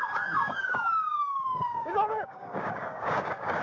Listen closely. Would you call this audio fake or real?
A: fake